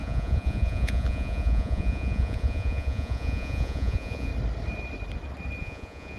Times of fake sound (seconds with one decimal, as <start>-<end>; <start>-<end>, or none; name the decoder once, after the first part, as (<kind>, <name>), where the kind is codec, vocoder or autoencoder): 0.0-4.3 (vocoder, Vocos); 5.6-6.2